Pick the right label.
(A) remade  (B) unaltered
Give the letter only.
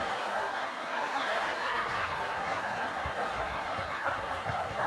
A